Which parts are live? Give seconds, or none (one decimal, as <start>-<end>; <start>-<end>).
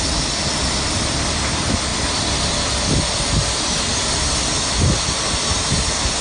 0.0-1.9; 5.6-6.2